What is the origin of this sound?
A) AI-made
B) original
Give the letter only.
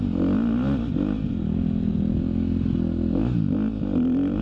B